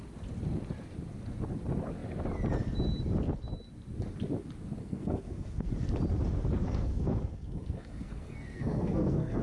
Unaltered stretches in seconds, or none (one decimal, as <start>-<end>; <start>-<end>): 0.0-4.8; 5.7-6.6